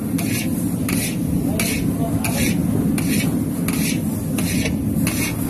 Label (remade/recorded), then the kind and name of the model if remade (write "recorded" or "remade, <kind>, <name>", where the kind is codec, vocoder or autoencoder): recorded